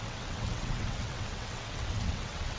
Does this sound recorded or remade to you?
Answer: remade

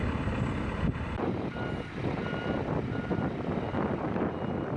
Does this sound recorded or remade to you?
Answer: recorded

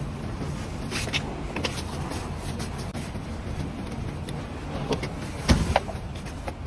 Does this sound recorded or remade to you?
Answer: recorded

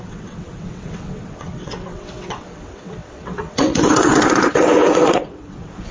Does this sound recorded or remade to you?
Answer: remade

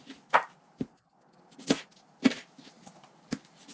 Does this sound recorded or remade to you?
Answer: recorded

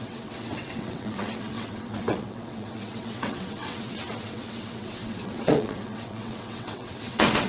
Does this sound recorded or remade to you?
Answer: remade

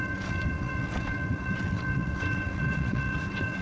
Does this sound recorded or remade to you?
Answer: remade